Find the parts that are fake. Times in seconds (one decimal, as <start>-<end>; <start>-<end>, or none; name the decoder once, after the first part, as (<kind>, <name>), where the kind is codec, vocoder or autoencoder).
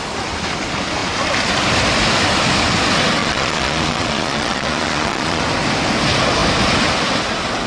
3.2-5.4 (vocoder, Vocos)